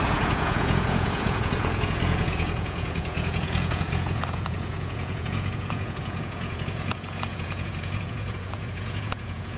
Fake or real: fake